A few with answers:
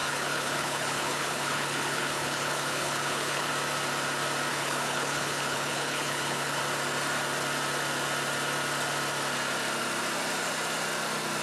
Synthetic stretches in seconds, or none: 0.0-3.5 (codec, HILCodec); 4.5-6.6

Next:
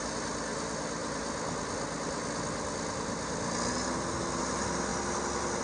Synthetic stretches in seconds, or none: none

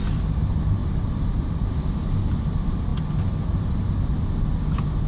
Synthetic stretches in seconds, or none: none